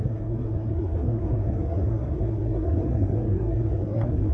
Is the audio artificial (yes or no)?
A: yes